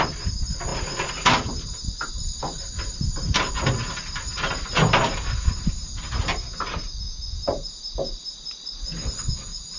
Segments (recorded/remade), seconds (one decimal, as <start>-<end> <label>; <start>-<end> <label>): 0.0-9.8 recorded